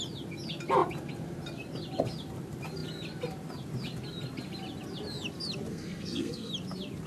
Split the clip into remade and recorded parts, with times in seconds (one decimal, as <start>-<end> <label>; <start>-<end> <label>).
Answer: 0.0-5.7 recorded; 5.7-6.5 remade; 6.5-7.1 recorded